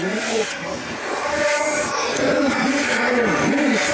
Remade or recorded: recorded